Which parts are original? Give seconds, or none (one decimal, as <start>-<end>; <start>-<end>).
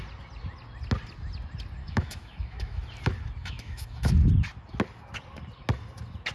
0.0-1.8; 2.8-3.4; 4.1-6.3